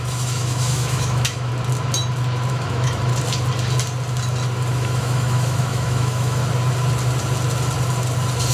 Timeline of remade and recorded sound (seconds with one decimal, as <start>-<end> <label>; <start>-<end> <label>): 0.0-1.5 remade; 1.5-2.5 recorded; 2.5-3.1 remade; 3.1-4.7 recorded; 4.7-6.4 remade; 6.4-8.5 recorded